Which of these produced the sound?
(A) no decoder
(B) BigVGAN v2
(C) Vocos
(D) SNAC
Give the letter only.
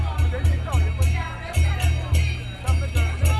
A